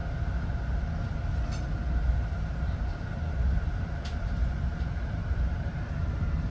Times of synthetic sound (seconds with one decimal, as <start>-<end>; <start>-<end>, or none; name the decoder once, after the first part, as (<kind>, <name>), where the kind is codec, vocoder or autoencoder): 1.8-5.7 (vocoder, BigVGAN v2)